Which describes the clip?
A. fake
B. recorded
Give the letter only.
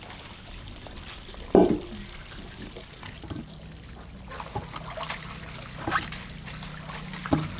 B